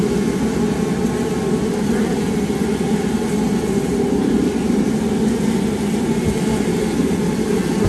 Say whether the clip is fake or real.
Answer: real